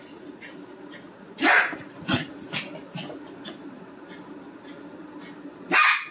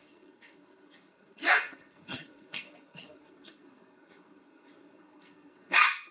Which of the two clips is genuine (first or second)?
first